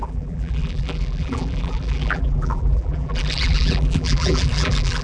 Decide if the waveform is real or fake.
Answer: fake